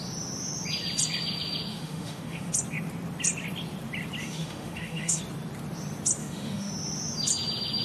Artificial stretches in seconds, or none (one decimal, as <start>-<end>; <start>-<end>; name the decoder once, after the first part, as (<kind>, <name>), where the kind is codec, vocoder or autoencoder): 1.7-2.5 (autoencoder, DAC-VAE); 4.2-5.2; 6.2-6.7